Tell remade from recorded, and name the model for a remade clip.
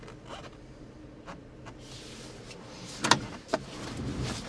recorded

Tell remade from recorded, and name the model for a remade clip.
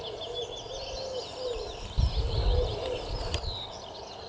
recorded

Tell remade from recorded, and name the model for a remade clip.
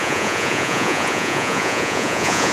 remade, vocoder, Vocos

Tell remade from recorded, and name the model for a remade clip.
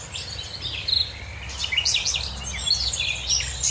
recorded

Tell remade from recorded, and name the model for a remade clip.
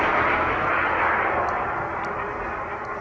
recorded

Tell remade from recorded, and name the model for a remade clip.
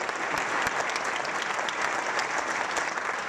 recorded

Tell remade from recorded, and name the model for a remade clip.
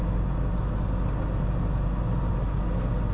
recorded